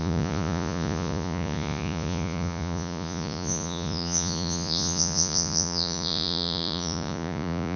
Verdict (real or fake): fake